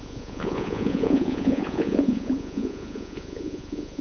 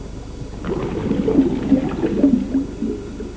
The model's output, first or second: first